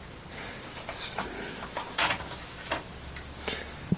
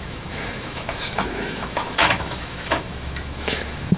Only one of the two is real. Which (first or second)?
first